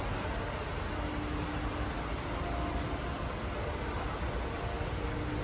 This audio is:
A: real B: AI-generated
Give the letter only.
A